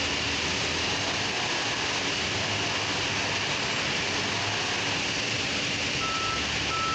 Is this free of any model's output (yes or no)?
yes